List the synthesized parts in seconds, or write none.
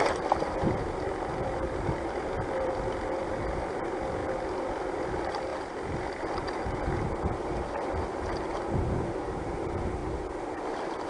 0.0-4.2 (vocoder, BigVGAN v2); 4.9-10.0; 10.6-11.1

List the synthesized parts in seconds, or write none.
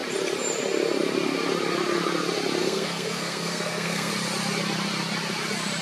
2.6-4.1 (codec, SNAC)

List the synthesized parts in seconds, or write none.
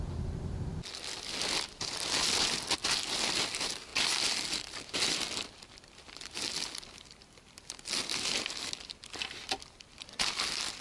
none